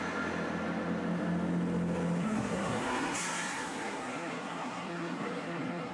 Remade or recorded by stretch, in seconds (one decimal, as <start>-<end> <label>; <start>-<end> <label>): 0.0-2.2 recorded; 2.2-5.9 remade